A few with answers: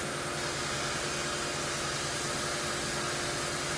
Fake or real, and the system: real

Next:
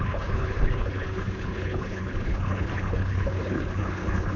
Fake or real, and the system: fake, codec, HILCodec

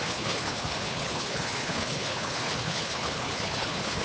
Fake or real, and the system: fake, codec, HILCodec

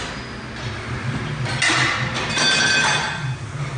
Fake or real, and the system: real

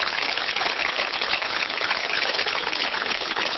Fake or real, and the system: fake, codec, HILCodec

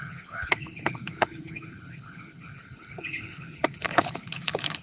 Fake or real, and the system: fake, codec, HILCodec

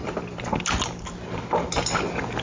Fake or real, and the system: real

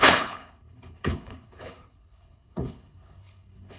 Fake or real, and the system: fake, codec, HILCodec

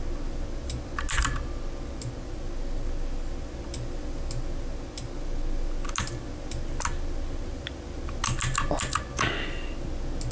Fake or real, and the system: real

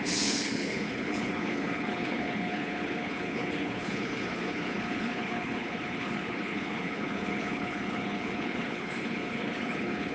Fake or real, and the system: fake, codec, HILCodec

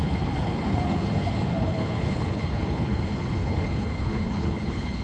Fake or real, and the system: fake, codec, HILCodec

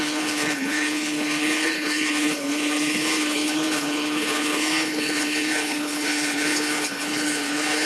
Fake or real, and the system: fake, codec, HILCodec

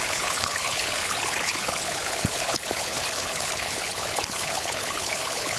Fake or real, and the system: fake, codec, HILCodec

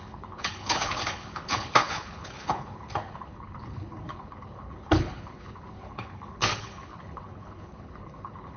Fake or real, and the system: fake, codec, HILCodec